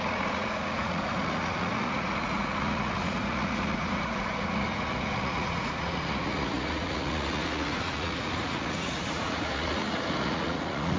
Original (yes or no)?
no